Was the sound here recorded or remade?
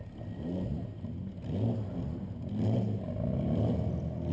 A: recorded